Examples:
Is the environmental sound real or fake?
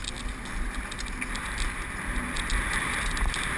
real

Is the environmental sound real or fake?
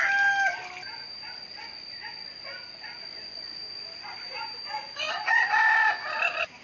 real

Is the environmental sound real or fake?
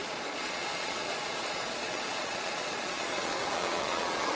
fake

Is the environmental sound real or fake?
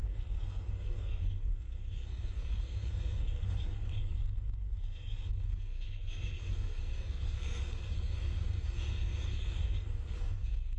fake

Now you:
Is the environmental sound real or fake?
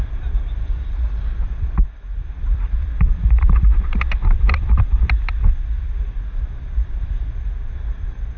fake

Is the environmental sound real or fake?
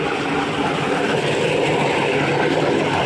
real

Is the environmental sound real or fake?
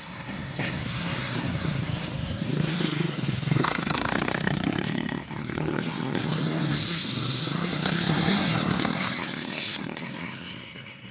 fake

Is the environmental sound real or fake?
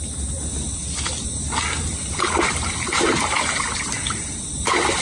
real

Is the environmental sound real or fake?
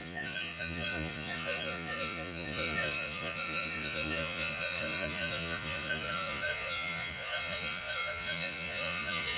fake